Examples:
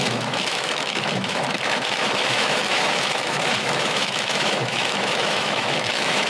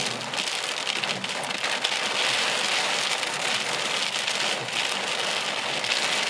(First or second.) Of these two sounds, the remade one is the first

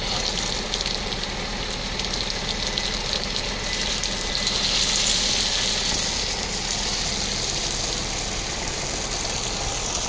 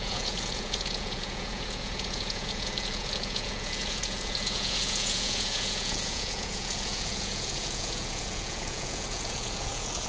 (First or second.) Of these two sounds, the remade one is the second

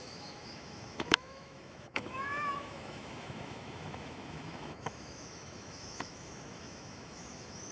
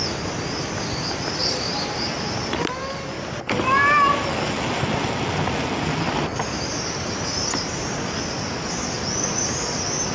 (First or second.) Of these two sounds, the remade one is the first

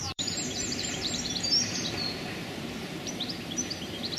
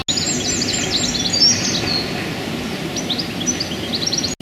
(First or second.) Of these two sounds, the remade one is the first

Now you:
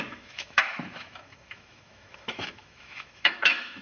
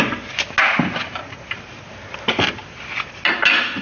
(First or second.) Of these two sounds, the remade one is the first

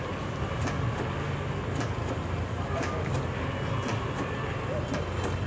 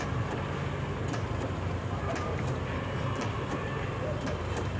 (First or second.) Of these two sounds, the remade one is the second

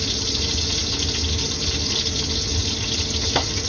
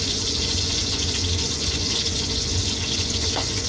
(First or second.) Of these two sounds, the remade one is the second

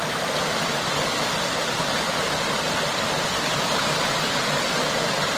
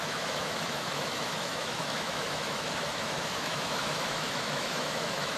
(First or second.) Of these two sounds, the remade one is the second